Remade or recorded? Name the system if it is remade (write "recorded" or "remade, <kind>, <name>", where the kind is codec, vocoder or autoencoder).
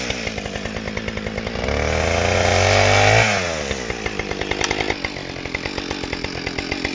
recorded